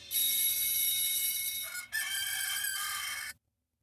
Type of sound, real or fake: real